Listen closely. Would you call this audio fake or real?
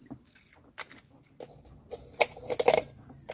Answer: real